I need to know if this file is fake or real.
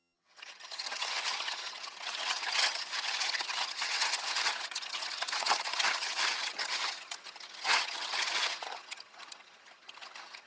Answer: fake